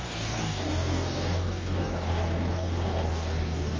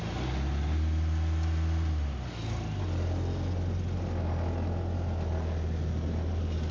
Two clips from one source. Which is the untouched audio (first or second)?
second